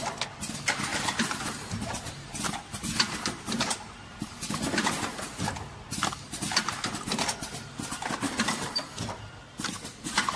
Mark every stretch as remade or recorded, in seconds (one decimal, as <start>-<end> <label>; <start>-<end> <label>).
0.0-0.9 recorded; 0.9-4.3 remade; 4.3-10.4 recorded